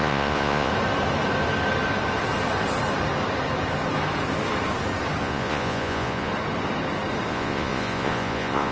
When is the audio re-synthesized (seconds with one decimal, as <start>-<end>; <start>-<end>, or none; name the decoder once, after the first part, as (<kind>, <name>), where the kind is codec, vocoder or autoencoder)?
0.0-0.7 (vocoder, Vocos); 5.2-6.3; 7.3-8.7